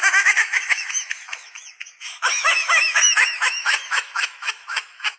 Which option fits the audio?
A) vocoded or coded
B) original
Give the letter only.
A